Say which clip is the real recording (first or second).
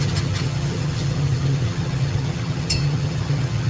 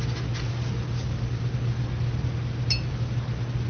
second